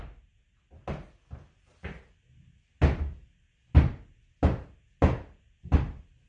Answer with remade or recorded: recorded